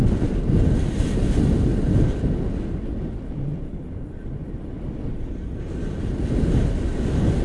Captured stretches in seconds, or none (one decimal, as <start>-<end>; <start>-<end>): 0.0-1.7; 2.3-7.4